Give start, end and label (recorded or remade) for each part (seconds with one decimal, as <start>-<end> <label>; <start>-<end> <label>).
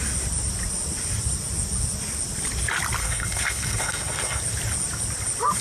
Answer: 0.0-3.0 recorded; 3.0-4.4 remade; 4.4-5.6 recorded